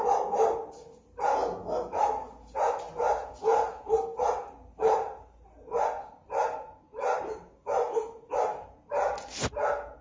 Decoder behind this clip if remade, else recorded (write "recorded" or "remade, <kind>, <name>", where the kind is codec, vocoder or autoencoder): recorded